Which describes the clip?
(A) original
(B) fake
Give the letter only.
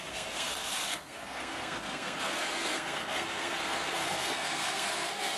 B